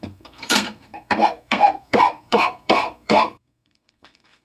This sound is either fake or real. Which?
fake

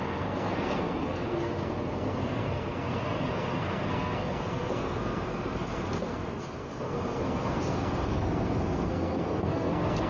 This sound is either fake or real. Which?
fake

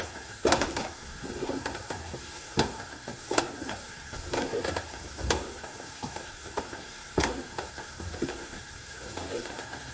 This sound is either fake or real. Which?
fake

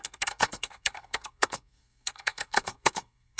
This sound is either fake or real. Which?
fake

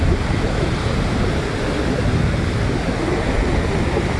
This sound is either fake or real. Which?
real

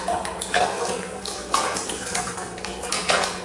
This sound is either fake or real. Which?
fake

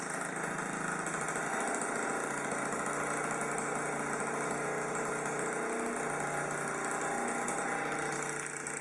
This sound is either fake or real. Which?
real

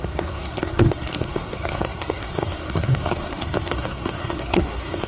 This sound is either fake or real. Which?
fake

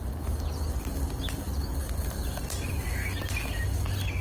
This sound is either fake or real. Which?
real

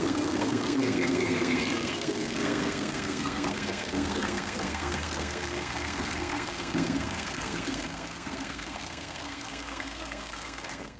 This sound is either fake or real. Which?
fake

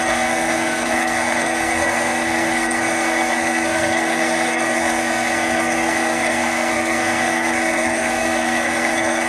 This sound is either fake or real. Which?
fake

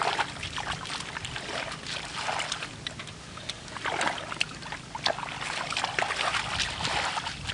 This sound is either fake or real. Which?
real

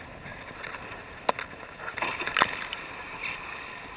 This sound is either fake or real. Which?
real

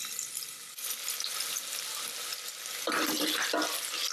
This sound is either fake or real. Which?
real